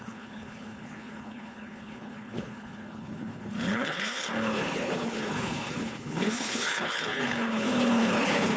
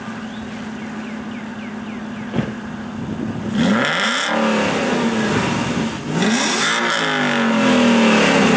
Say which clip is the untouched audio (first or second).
second